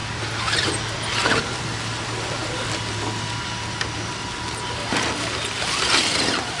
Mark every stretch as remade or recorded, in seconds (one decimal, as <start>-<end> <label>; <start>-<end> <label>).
0.0-1.6 remade; 1.6-6.6 recorded